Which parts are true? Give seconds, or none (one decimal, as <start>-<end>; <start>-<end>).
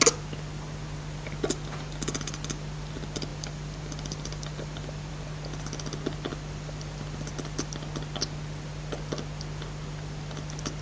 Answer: 0.0-3.3; 5.1-6.3; 7.3-10.8